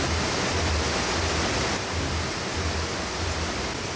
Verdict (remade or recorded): recorded